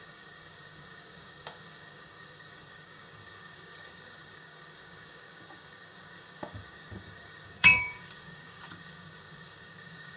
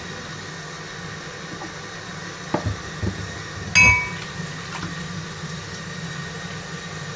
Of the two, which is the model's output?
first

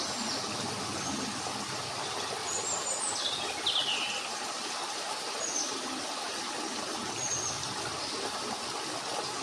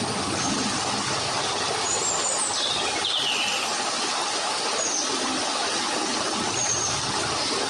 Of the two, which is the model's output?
second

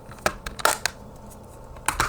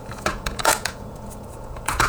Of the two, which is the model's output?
second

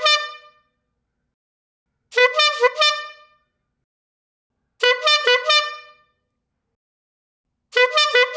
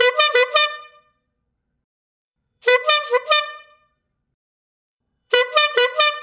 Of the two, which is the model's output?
second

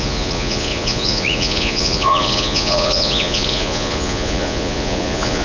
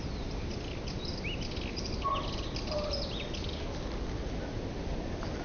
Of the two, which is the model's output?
first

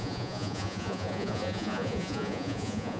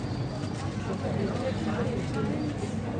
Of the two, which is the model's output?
first